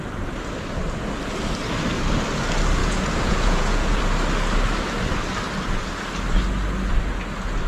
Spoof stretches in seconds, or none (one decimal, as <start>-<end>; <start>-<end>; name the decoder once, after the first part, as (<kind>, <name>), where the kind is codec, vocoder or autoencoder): 2.8-4.0 (vocoder, Vocos)

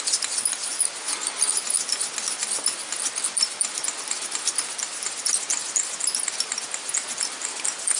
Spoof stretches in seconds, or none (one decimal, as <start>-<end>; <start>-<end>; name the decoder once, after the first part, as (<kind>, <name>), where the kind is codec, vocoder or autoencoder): none

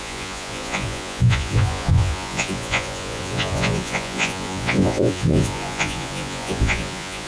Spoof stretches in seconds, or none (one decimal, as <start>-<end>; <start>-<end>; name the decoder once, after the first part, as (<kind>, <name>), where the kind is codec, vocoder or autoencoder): 0.0-7.3 (vocoder, Vocos)

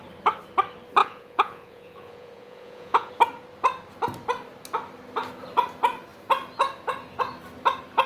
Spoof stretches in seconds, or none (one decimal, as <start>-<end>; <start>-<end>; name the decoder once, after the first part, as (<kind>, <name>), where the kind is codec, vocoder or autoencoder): 1.0-3.1 (vocoder, Vocos)

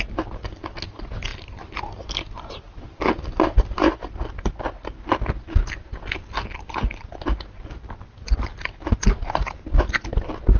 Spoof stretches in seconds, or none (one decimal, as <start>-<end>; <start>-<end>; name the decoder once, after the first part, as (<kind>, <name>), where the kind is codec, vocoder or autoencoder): none

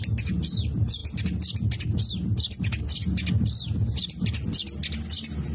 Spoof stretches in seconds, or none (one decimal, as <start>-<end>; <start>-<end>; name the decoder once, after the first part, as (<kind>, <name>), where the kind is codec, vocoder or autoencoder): none

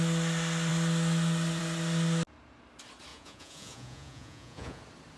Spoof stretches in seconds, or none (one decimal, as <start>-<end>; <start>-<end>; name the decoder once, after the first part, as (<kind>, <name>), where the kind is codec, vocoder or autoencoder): 3.1-4.8 (vocoder, Vocos)

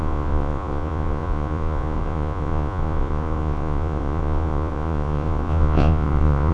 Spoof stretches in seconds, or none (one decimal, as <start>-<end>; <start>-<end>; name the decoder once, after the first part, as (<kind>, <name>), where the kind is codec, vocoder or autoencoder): 0.0-6.5 (vocoder, Vocos)